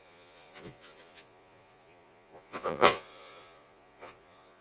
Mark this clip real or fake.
fake